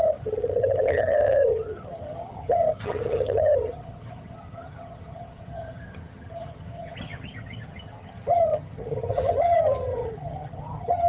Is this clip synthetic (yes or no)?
yes